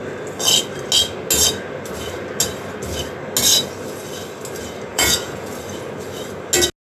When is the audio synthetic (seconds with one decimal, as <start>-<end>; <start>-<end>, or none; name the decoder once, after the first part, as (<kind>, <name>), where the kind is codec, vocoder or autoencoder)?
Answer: 4.9-5.5 (vocoder, Vocos)